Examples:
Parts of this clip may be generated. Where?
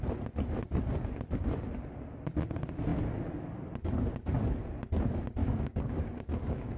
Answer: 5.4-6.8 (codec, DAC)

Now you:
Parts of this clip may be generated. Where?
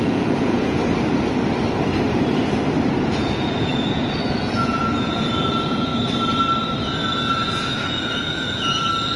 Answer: 0.0-0.8 (vocoder, Vocos); 3.0-5.9; 6.8-9.2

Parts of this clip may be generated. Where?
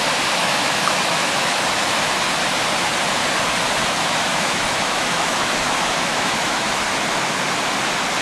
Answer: 0.4-2.2 (autoencoder, DAC-VAE); 3.8-6.7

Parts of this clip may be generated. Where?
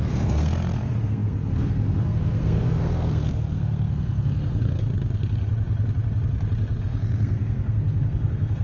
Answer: 0.0-4.9 (codec, SNAC); 6.8-8.6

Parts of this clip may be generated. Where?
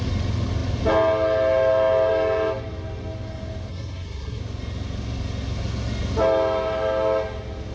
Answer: 3.7-4.4 (codec, SNAC)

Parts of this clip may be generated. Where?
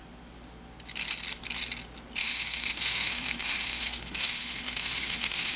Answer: 2.2-5.6 (autoencoder, DAC-VAE)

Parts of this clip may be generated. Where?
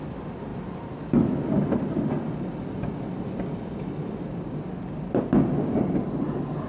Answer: 0.5-1.5 (vocoder, BigVGAN v2)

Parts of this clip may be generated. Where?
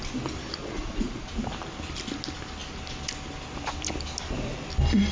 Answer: 0.6-1.3 (vocoder, Vocos)